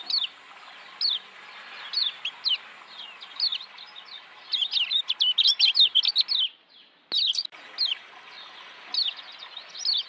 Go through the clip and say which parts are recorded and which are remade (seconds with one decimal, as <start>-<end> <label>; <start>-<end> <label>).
0.0-10.1 recorded